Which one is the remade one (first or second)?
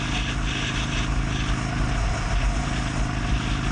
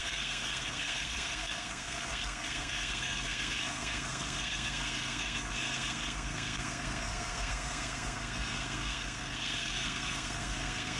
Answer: second